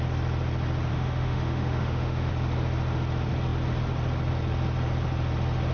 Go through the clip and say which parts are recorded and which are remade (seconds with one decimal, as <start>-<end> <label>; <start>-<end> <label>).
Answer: 0.0-0.9 recorded; 0.9-2.3 remade; 2.3-5.7 recorded